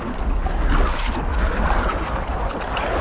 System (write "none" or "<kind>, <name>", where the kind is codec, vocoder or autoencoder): none